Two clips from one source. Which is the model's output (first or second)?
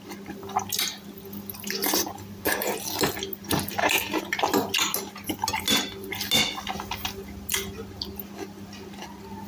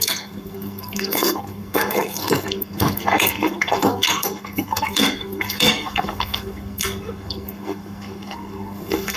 second